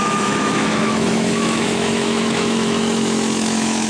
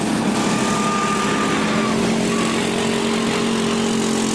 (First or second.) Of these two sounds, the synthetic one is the first